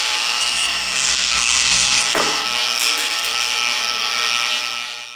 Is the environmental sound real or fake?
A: fake